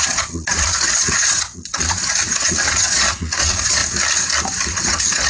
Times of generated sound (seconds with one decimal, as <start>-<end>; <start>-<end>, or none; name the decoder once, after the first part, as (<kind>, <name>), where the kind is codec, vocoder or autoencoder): 0.0-3.8 (vocoder, Vocos); 4.7-5.3